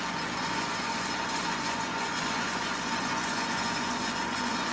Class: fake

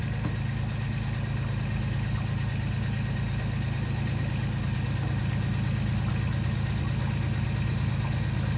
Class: real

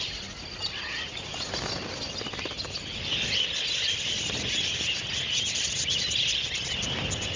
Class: real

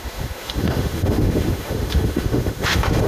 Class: fake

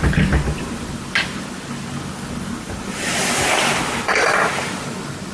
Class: real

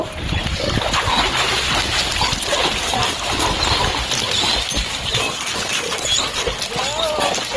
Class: real